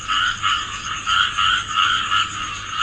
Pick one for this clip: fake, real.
fake